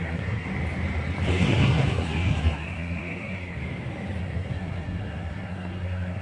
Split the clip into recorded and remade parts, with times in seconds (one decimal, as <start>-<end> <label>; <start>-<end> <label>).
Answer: 0.0-0.5 remade; 0.5-1.3 recorded; 1.3-3.6 remade; 3.6-4.2 recorded; 4.2-6.2 remade